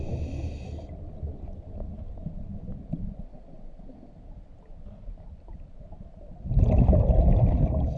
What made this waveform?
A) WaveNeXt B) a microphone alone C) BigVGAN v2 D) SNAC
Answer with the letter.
B